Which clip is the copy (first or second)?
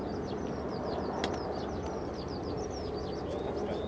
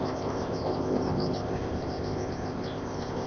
second